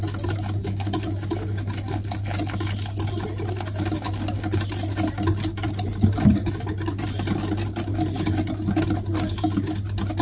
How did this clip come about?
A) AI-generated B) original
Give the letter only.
B